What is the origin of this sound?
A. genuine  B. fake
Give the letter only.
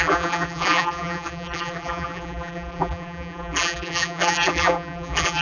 B